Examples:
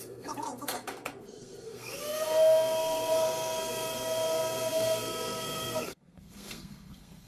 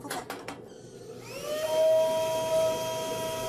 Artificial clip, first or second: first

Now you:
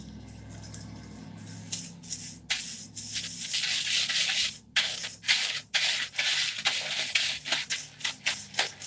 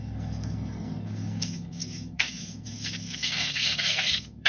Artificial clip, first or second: second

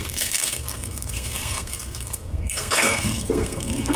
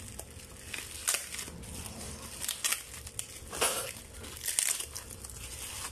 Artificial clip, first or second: first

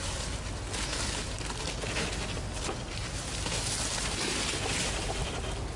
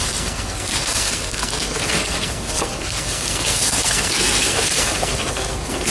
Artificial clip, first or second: second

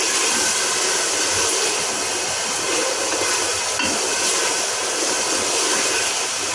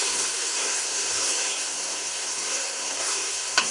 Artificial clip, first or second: second